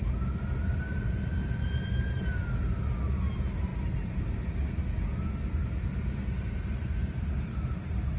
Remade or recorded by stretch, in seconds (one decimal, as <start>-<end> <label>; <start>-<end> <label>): 0.0-8.2 recorded